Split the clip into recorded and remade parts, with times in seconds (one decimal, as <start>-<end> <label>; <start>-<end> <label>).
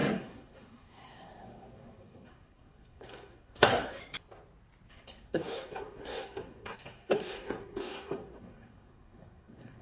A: 0.0-4.0 remade; 4.0-4.9 recorded; 4.9-9.8 remade